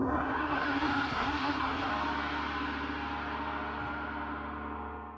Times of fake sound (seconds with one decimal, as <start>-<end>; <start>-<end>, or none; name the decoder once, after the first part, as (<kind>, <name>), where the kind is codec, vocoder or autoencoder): 0.0-1.9 (codec, SNAC)